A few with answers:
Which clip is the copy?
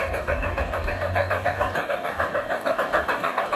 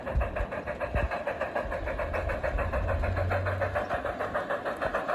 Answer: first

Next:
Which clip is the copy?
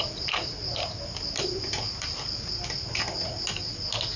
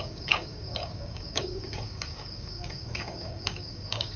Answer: second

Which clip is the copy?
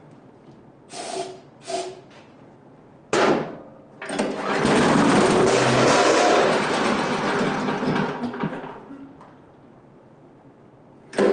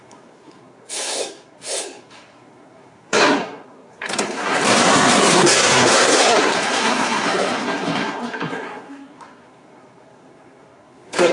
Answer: second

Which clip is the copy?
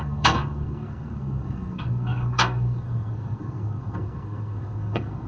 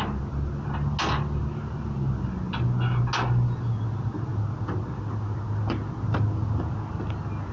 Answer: first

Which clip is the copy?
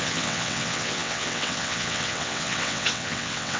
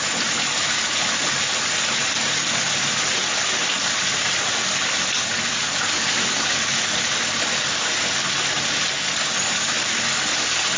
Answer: first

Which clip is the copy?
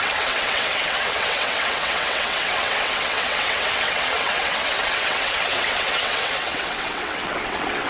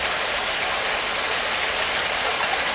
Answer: first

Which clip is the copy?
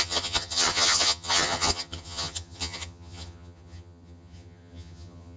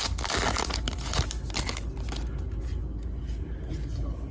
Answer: first